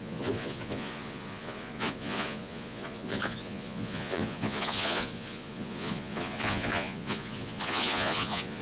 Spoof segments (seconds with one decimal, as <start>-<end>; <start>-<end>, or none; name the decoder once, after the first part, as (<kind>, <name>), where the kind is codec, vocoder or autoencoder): 0.0-8.6 (vocoder, Vocos)